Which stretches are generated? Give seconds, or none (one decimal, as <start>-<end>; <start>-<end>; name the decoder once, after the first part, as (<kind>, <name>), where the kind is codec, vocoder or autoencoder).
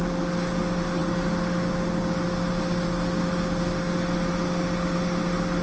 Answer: none